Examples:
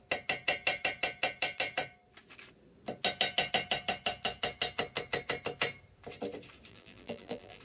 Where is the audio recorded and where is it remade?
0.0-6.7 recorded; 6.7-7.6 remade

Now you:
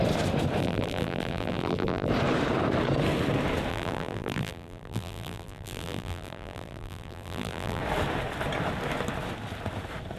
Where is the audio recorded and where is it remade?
0.0-0.6 recorded; 0.6-2.1 remade; 2.1-3.7 recorded; 3.7-7.8 remade; 7.8-10.2 recorded